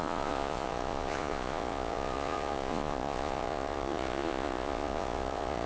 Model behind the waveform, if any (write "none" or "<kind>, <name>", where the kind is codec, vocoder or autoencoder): vocoder, Vocos